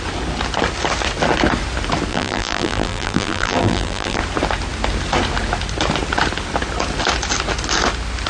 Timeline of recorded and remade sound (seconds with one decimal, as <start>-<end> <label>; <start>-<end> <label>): 0.0-2.1 recorded; 2.1-4.2 remade; 4.2-8.3 recorded